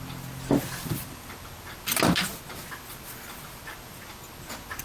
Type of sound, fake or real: real